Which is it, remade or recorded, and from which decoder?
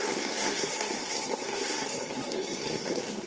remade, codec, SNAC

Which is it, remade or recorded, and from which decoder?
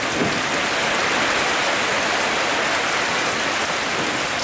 recorded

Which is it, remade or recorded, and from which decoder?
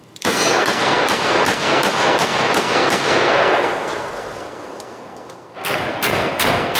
remade, codec, SNAC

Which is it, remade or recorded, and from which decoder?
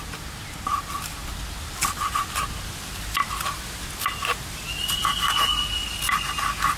recorded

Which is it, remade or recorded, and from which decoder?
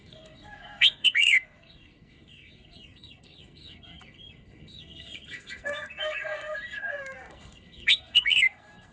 remade, codec, SNAC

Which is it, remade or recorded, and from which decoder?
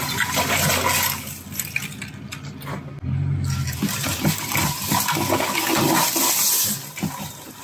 recorded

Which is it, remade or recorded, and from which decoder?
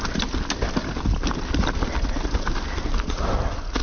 recorded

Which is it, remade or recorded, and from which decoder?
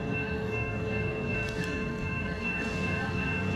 remade, codec, SNAC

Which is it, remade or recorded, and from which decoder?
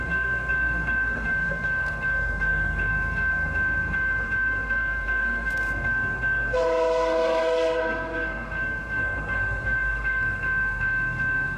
remade, codec, SNAC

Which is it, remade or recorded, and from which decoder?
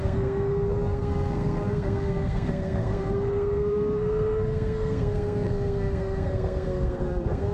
remade, codec, SNAC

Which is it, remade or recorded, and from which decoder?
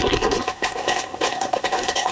remade, codec, SNAC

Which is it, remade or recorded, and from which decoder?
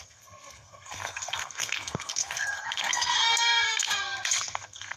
remade, codec, SNAC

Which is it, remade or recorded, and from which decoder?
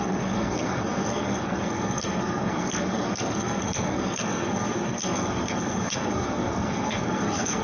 remade, codec, SNAC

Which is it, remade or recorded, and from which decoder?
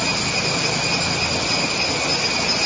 recorded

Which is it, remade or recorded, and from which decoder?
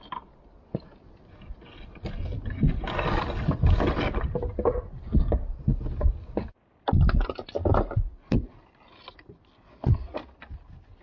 recorded